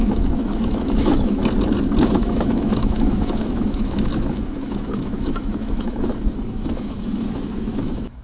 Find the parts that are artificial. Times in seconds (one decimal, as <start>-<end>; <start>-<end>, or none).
0.0-1.4; 2.0-8.2